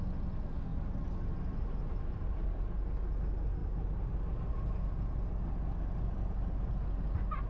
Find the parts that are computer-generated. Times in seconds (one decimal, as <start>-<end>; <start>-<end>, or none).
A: 0.7-2.6; 3.6-4.1